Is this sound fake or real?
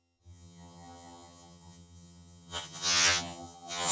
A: fake